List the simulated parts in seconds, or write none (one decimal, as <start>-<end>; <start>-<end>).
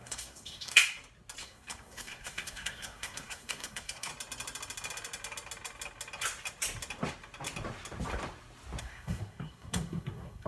0.0-0.8; 1.4-4.1; 8.8-10.5